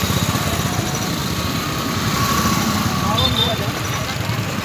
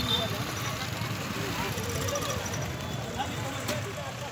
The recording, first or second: second